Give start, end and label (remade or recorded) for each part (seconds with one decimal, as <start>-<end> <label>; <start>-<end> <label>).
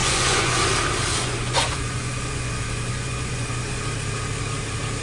0.0-0.6 remade; 0.6-1.1 recorded; 1.1-3.8 remade; 3.8-5.0 recorded